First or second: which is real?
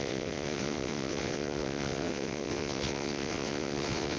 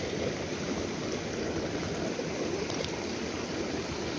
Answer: second